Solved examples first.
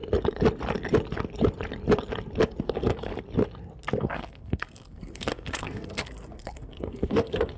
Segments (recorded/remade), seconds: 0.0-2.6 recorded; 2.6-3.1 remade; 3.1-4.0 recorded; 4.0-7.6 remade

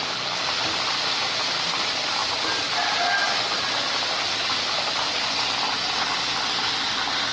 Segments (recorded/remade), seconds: 0.0-7.3 recorded